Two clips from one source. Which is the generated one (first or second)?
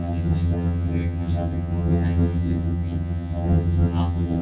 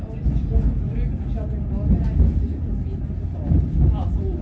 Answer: first